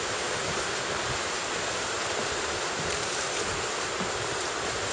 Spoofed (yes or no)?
no